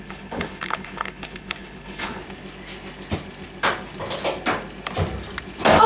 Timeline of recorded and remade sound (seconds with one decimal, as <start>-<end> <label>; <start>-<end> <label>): 0.0-2.2 remade; 2.2-5.9 recorded